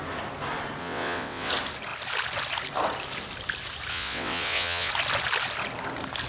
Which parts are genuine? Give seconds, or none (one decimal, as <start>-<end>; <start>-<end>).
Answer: 0.0-0.8; 1.5-3.9; 4.9-6.3